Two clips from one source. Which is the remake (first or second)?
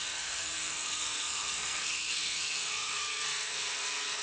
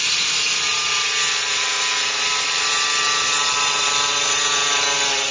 first